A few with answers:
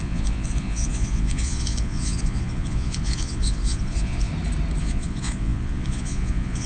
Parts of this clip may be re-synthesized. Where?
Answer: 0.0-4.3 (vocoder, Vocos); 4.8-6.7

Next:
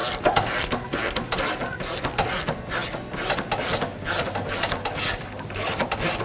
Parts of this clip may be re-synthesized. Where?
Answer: 0.0-2.8 (vocoder, BigVGAN v2); 5.1-6.2

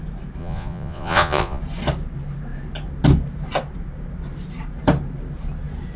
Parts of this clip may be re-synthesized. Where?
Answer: 0.4-1.6 (vocoder, Vocos)